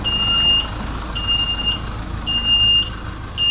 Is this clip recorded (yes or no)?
yes